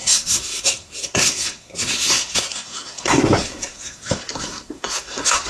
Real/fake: fake